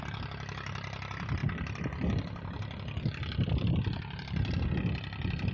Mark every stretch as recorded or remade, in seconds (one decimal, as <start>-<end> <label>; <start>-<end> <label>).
0.0-5.5 recorded